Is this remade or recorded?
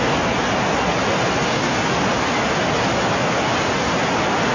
recorded